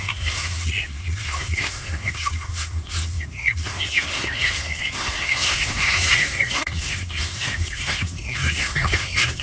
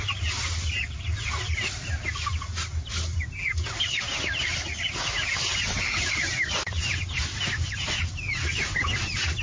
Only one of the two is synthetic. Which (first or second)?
first